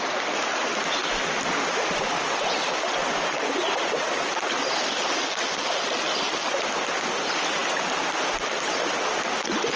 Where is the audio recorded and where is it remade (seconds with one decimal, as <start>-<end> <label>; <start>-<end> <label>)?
0.0-9.8 recorded

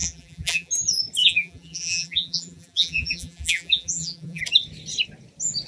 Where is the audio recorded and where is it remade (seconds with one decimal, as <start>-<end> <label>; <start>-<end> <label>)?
0.0-0.7 remade; 0.7-1.2 recorded; 1.2-4.4 remade; 4.4-5.7 recorded

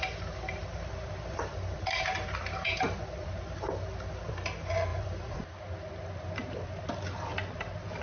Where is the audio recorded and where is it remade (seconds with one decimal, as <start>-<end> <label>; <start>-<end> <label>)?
0.0-0.6 recorded; 0.6-2.1 remade; 2.1-4.9 recorded; 4.9-5.6 remade; 5.6-8.0 recorded

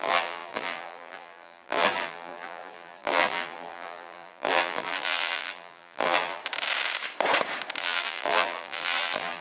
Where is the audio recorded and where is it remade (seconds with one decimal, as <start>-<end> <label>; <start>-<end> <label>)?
0.0-6.4 remade; 6.4-7.8 recorded; 7.8-9.4 remade

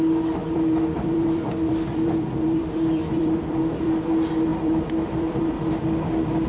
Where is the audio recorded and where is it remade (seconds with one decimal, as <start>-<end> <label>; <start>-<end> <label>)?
0.0-0.4 recorded; 0.4-4.1 remade; 4.1-4.5 recorded; 4.5-5.7 remade; 5.7-6.5 recorded